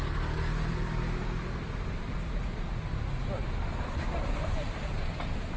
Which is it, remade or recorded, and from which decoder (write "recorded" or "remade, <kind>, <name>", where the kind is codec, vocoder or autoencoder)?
recorded